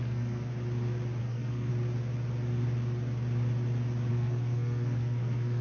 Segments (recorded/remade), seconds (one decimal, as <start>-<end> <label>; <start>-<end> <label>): 0.0-0.5 remade; 0.5-1.2 recorded; 1.2-1.7 remade; 1.7-4.1 recorded; 4.1-5.6 remade